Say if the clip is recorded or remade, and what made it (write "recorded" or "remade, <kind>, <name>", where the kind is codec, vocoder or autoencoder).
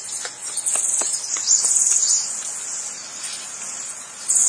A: recorded